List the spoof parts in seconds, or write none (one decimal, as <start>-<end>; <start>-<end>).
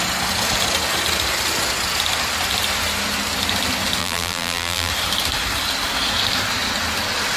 4.0-4.9